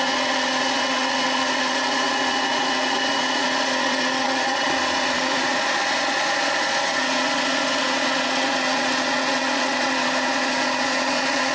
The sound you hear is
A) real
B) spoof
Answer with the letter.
B